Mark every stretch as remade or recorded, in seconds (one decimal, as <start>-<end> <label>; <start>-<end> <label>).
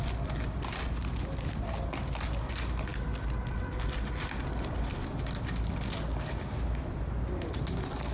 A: 0.0-8.1 recorded